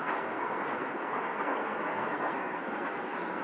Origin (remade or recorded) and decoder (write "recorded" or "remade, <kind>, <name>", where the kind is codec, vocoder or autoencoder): remade, codec, SNAC